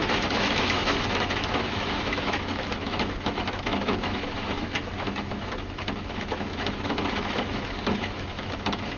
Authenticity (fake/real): fake